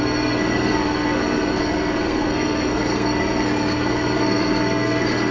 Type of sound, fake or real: fake